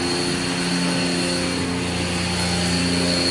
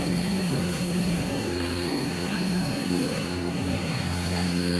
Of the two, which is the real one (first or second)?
first